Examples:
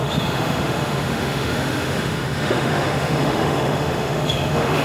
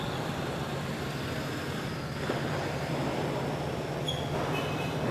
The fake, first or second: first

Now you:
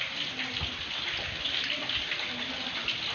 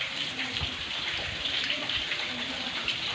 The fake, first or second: second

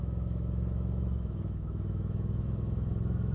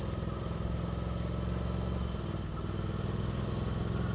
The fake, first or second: first